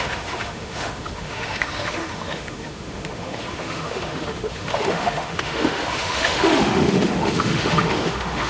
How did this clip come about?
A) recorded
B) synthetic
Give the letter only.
B